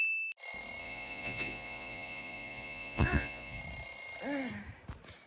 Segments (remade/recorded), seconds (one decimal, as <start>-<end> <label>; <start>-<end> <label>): 0.0-0.8 recorded; 0.8-3.6 remade; 3.6-5.3 recorded